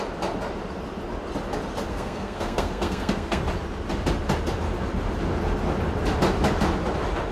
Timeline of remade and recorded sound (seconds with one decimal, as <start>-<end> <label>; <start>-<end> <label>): 0.0-1.9 recorded; 1.9-3.4 remade; 3.4-7.3 recorded